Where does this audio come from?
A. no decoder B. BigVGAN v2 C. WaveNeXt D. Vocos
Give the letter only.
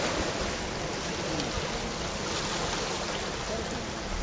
A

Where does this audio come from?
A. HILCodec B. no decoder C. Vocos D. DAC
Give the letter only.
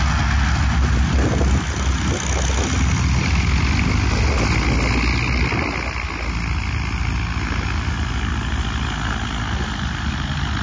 B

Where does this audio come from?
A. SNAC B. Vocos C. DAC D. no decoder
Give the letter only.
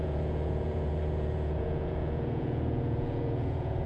B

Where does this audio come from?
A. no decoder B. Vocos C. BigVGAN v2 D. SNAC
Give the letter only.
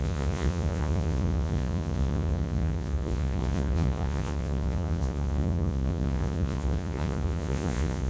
B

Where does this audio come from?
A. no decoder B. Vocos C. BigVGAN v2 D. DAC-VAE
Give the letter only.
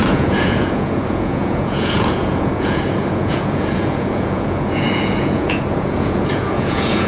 B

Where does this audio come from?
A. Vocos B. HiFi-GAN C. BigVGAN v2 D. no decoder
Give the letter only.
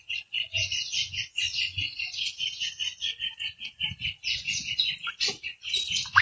A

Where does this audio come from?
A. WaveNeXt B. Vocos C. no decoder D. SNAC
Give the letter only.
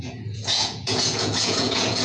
B